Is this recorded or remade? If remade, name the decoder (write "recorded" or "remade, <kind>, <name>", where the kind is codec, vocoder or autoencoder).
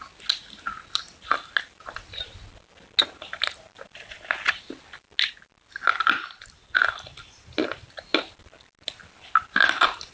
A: recorded